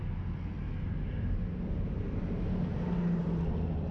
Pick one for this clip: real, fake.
real